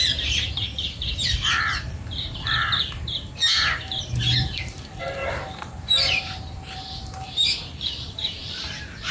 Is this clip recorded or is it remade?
remade